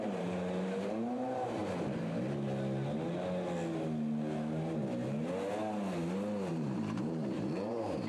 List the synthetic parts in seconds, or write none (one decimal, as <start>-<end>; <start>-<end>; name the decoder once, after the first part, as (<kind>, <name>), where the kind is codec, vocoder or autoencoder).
0.0-1.6 (vocoder, BigVGAN v2); 6.5-8.1